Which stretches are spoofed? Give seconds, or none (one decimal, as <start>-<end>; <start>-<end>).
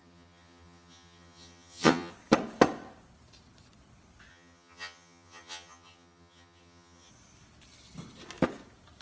0.0-2.1; 4.3-7.1